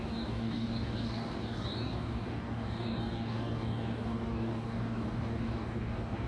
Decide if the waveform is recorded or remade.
remade